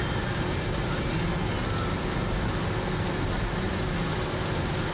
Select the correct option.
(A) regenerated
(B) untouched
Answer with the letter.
B